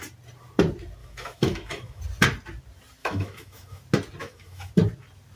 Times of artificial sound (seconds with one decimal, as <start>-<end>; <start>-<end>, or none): 1.0-2.0; 3.0-3.8; 4.2-4.7